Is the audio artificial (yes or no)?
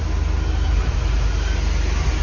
no